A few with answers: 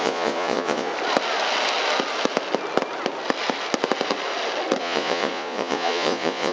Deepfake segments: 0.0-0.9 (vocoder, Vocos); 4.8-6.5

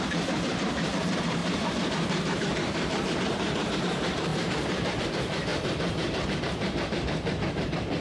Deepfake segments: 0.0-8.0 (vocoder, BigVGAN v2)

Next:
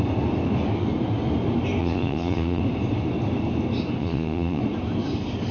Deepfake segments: 1.8-2.6 (vocoder, Vocos); 4.0-4.6

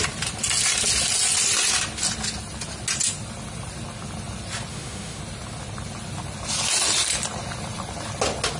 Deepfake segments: 4.7-5.2 (autoencoder, DAC-VAE)

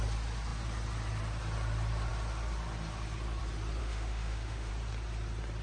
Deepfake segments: 3.8-4.7 (autoencoder, DAC-VAE)

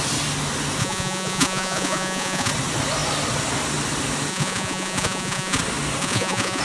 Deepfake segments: 0.8-2.5 (vocoder, Vocos); 4.3-5.6; 6.0-6.6

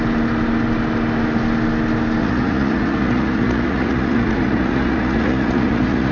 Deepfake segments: 2.2-6.1 (vocoder, Vocos)